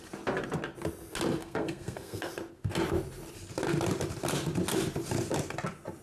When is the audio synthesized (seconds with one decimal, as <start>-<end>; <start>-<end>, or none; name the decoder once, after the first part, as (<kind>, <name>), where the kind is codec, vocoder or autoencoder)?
1.4-2.3 (codec, SNAC)